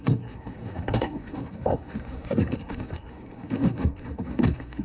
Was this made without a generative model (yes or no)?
no